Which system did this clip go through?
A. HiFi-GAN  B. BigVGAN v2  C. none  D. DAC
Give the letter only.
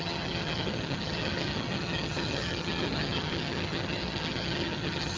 A